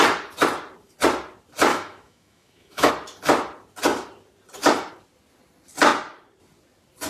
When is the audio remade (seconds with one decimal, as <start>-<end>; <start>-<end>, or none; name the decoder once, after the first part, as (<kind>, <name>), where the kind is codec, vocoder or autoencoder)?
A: 1.7-2.9 (autoencoder, DAC-VAE)

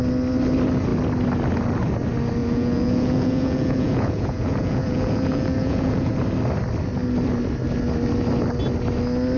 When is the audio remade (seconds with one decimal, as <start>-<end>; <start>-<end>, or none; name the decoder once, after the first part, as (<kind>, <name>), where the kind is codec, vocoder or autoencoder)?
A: 2.4-6.1 (vocoder, Vocos)

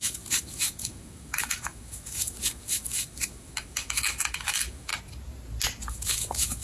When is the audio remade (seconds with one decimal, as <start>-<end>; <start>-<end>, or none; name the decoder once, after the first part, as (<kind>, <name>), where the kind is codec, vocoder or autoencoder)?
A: 0.0-4.9 (autoencoder, DAC-VAE); 5.9-6.6

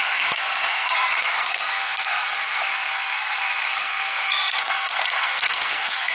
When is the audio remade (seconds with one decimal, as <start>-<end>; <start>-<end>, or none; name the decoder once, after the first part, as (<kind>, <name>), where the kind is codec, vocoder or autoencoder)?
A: 0.0-6.1 (codec, SNAC)

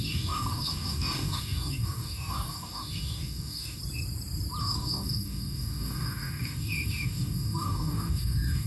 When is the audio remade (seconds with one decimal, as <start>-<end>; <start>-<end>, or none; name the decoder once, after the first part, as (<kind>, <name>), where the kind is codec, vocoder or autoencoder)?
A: 0.0-3.8 (codec, DAC); 4.6-8.7

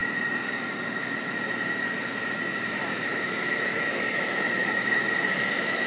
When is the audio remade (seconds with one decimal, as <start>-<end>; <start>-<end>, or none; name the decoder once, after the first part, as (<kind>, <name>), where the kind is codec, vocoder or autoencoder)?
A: 2.7-5.0 (autoencoder, DAC-VAE); 5.5-5.9

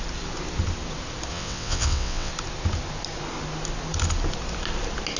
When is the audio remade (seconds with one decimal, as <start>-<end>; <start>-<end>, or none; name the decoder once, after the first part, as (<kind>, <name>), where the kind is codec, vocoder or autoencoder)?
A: 1.3-2.3 (vocoder, WaveNeXt)